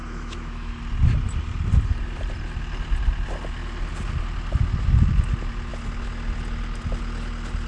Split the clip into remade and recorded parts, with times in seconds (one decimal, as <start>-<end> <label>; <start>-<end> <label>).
0.0-0.8 remade; 0.8-7.7 recorded